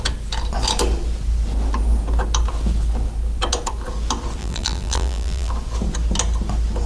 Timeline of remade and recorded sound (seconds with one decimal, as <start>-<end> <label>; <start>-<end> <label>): 0.0-4.4 recorded; 4.4-5.5 remade; 5.5-6.9 recorded